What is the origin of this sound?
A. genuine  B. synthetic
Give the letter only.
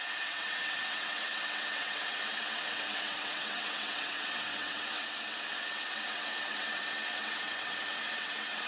B